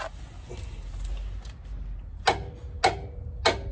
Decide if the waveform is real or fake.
real